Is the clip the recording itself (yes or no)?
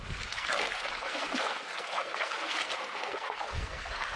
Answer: no